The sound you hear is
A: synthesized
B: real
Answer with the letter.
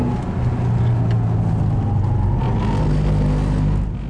B